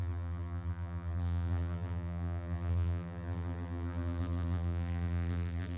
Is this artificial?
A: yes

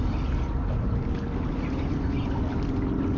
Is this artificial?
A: no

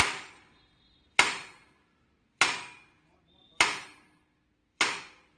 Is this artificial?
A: yes